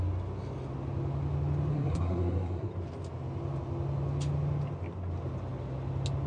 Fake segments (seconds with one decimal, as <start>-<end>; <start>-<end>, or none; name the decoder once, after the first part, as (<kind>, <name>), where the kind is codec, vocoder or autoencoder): 1.7-2.7 (codec, SNAC)